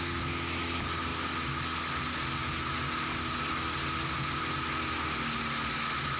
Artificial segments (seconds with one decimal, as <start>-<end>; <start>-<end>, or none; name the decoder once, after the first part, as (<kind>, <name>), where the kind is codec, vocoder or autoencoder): none